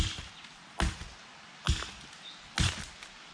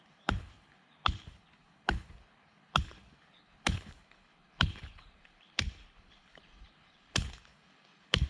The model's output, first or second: second